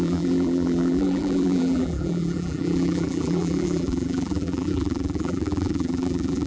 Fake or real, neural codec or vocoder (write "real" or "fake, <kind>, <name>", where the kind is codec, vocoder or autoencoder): fake, vocoder, BigVGAN v2